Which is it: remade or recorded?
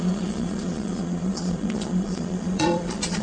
remade